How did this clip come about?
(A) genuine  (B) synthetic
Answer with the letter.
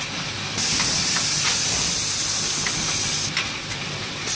A